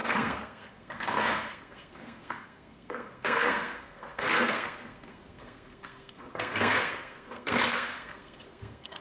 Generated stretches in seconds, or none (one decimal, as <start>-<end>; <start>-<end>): 0.0-9.0